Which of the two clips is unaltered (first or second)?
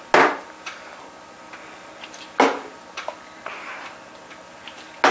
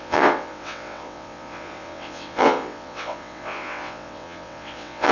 first